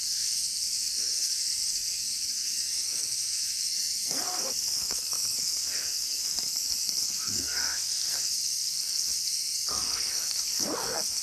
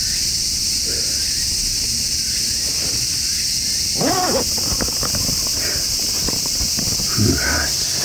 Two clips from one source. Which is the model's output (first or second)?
first